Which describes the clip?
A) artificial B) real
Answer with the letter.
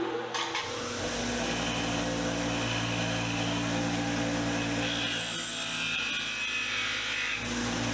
B